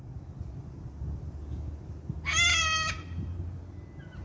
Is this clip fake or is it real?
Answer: real